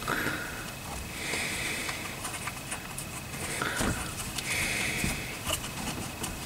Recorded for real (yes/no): yes